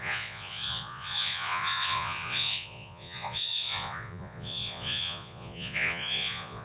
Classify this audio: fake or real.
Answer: fake